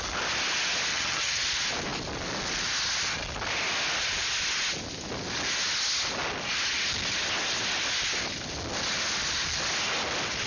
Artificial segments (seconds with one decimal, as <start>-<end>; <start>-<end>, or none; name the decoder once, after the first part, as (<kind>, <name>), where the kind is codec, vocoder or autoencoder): 0.9-1.4 (vocoder, HiFi-GAN)